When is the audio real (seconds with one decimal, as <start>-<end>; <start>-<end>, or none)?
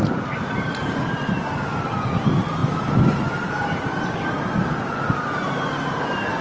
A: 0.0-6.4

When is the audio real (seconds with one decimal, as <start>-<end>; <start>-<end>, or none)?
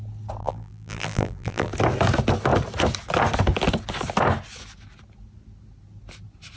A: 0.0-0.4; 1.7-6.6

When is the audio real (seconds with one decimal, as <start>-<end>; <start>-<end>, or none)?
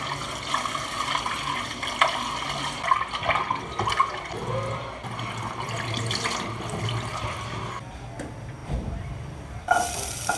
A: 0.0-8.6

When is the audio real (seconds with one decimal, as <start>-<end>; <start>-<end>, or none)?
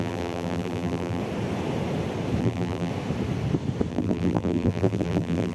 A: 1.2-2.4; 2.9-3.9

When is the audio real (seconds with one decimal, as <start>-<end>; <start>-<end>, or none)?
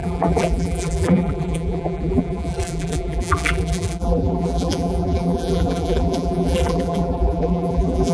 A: none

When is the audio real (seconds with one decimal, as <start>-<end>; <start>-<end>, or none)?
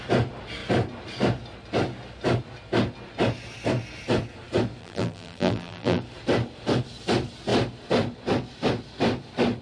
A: 0.0-4.8; 6.0-9.6